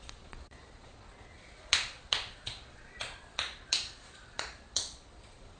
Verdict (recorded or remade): remade